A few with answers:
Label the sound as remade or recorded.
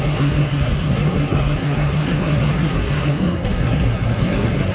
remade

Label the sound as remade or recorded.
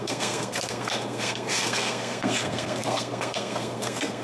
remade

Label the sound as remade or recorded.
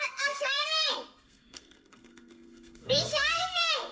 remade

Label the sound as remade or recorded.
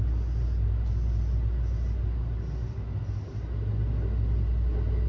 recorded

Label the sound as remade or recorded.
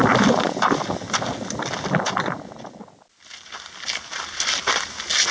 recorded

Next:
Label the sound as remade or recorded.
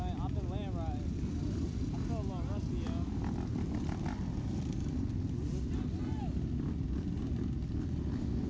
recorded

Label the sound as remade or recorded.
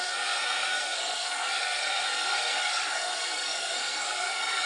remade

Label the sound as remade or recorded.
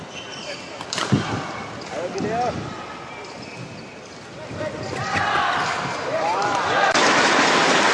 recorded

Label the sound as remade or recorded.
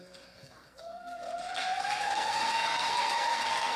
remade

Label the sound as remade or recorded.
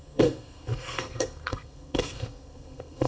remade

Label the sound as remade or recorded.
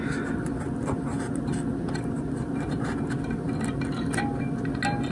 recorded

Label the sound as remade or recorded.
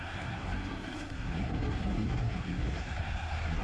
remade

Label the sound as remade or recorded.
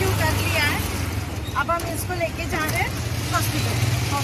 recorded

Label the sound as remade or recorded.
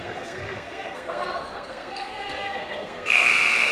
remade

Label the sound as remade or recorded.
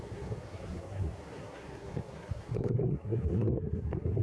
remade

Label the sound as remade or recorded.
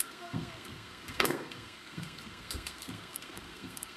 remade